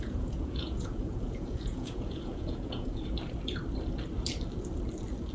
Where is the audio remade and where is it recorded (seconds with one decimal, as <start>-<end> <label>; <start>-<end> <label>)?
0.0-3.2 remade; 3.2-5.3 recorded